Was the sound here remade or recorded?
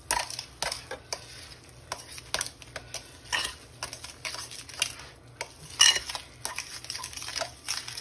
recorded